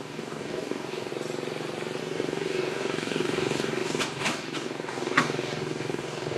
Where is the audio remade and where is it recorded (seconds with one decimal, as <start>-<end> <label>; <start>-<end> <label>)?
0.0-1.1 remade; 1.1-2.0 recorded; 2.0-6.4 remade